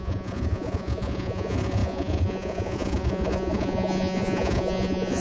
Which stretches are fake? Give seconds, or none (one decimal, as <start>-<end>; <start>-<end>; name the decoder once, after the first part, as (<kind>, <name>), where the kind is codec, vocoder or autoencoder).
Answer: 0.0-5.2 (vocoder, Vocos)